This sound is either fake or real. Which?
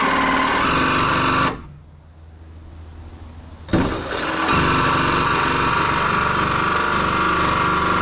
real